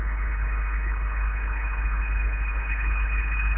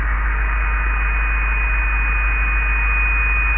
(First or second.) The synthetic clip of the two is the first